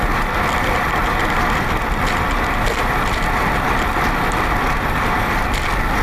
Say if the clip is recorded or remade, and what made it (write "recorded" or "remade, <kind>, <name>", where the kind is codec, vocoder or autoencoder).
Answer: remade, vocoder, BigVGAN v2